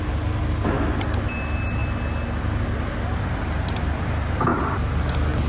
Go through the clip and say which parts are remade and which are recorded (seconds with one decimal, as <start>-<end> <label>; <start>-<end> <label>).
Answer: 0.0-5.5 recorded